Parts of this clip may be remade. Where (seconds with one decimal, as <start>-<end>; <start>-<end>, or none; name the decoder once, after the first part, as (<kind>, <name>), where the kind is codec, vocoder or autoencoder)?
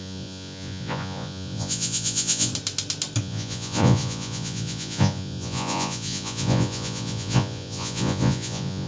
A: 0.0-2.5 (vocoder, Vocos); 3.2-8.9